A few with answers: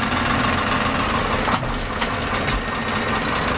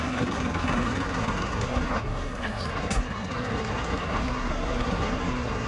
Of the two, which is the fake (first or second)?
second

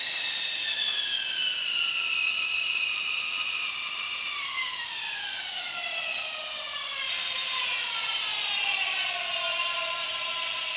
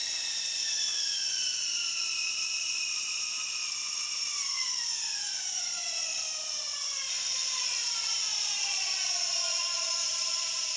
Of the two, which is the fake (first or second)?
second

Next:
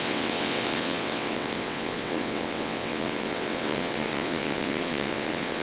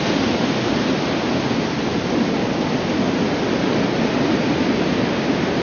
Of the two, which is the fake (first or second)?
first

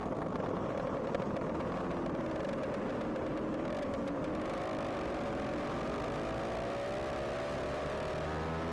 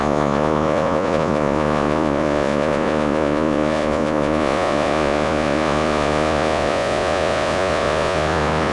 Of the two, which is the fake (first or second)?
second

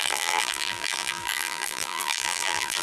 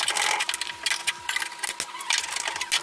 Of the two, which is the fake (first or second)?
first